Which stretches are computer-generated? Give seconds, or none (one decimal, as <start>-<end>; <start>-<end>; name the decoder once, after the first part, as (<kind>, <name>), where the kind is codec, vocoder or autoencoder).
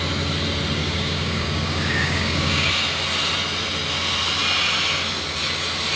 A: 0.8-2.7 (codec, DAC)